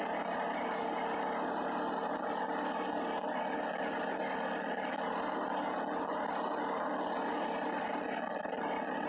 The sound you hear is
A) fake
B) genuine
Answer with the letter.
B